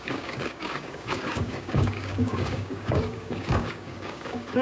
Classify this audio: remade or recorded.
remade